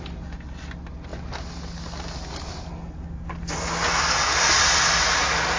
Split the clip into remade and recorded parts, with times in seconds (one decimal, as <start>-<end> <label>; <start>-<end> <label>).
0.0-5.6 recorded